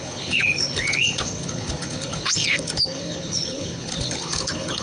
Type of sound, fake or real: fake